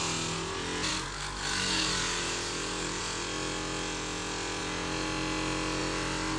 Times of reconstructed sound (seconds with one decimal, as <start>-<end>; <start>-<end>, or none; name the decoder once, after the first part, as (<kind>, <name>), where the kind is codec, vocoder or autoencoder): 0.9-3.0 (codec, DAC)